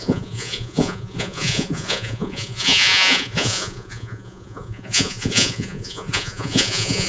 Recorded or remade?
remade